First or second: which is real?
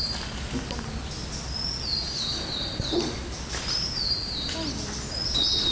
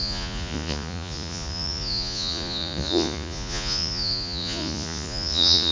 first